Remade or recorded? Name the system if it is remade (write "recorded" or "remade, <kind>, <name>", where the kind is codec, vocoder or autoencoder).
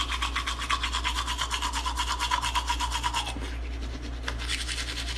recorded